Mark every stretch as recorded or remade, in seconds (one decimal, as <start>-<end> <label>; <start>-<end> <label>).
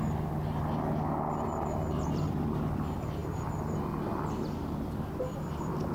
0.0-5.9 recorded